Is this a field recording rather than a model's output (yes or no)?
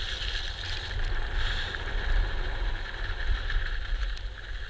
yes